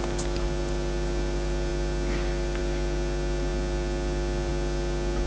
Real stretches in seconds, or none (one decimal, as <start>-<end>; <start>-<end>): 0.0-5.3